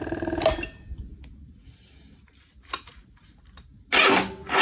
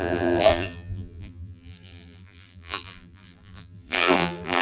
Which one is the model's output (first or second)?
second